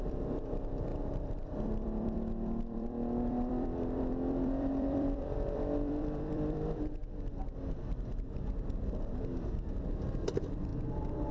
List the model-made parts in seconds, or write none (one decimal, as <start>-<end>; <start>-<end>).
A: 0.0-7.0; 8.1-10.7